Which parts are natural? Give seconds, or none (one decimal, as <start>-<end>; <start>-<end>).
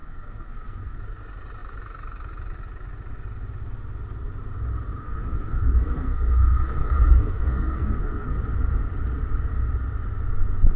1.0-5.0; 8.3-10.8